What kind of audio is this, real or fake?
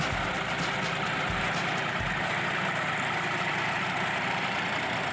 real